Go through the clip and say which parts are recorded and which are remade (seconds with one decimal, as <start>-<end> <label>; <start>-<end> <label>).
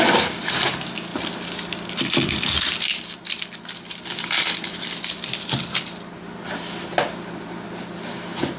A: 0.0-8.6 recorded